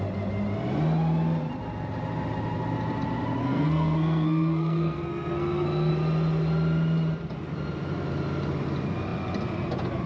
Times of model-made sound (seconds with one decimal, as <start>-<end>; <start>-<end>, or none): 3.4-5.9